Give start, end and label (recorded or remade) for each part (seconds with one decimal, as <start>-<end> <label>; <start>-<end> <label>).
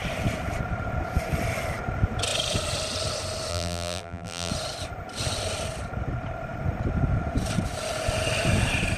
0.0-3.5 recorded; 3.5-4.5 remade; 4.5-9.0 recorded